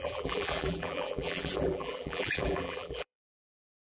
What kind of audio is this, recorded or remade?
remade